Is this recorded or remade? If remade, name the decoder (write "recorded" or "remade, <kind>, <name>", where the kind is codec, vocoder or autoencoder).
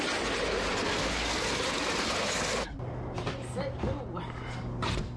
recorded